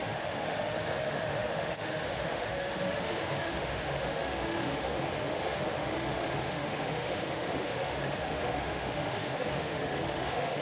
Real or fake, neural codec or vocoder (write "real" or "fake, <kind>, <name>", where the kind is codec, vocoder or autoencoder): fake, autoencoder, DAC-VAE